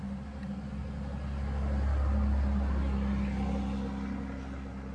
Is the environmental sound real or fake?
real